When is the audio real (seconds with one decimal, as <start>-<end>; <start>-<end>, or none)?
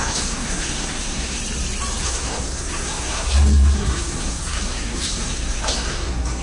1.4-2.0